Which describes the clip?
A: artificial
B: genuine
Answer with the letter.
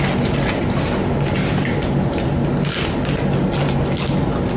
B